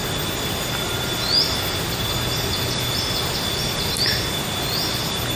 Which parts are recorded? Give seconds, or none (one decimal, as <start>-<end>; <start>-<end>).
0.0-5.4